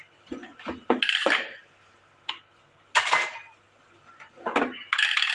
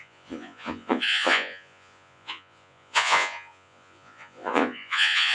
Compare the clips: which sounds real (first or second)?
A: first